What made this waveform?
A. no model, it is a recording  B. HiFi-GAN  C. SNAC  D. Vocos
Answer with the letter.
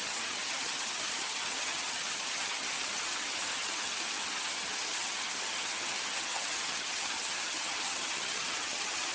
B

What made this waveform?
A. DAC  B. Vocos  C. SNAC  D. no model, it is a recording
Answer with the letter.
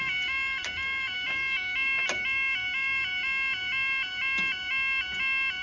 D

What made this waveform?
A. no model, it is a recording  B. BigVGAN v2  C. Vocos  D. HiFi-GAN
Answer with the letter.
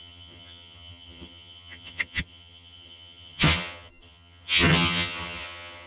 D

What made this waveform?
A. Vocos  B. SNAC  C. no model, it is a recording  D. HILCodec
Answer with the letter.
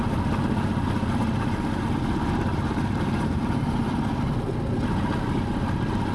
C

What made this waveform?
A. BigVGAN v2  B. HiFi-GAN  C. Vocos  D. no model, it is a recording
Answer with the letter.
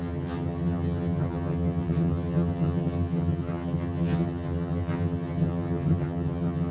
B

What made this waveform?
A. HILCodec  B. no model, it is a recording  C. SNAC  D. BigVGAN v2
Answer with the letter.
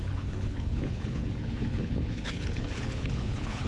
A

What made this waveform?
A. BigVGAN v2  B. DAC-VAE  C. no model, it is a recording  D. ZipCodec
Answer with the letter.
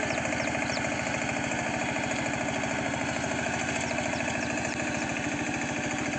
C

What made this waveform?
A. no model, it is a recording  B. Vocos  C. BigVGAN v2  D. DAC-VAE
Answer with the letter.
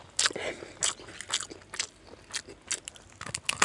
A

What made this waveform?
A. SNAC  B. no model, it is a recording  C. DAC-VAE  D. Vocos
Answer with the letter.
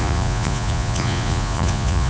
D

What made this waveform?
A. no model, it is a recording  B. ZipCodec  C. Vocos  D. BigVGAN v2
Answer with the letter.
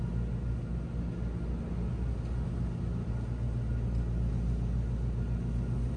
A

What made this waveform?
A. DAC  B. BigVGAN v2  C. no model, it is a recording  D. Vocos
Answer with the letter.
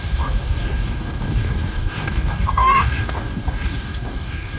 A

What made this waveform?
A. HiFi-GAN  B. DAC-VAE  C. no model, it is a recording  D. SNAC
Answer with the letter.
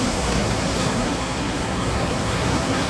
D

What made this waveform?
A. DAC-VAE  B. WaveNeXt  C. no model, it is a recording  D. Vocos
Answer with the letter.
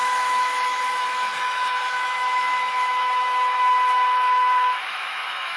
A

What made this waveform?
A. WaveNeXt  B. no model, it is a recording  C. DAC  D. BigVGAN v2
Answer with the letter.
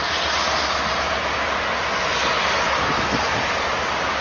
B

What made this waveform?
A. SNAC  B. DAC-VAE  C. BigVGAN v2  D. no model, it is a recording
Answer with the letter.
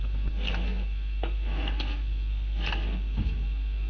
A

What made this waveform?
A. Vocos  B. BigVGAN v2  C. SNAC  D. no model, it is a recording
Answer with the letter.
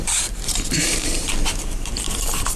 B